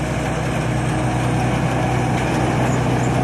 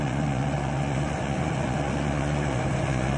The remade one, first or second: second